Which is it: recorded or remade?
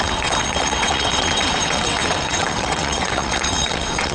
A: remade